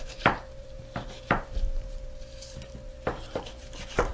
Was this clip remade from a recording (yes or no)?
yes